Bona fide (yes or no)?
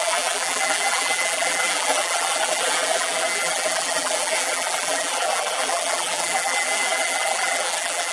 no